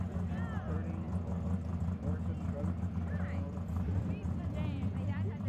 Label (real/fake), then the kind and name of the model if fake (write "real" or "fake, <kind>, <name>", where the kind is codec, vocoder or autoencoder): real